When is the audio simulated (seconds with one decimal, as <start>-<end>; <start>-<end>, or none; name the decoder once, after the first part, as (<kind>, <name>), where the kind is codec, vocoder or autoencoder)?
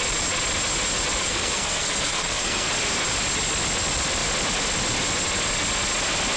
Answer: 1.2-2.7 (codec, SNAC)